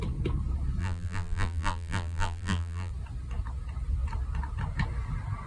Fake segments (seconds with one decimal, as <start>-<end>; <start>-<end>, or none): 0.8-2.9